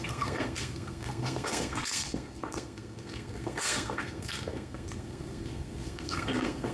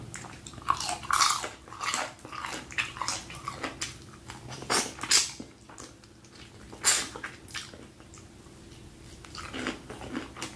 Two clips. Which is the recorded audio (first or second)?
second